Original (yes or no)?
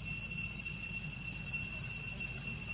yes